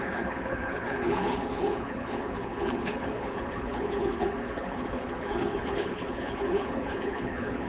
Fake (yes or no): yes